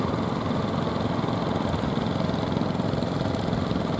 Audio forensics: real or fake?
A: real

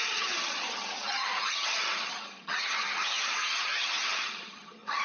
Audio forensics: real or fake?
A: fake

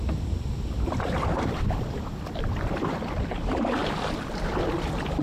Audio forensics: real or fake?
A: fake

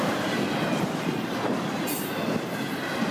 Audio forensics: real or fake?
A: real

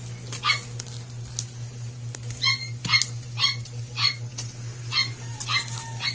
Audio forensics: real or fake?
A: real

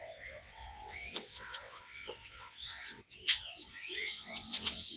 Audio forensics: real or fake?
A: fake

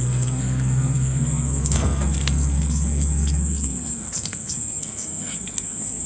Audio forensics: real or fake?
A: fake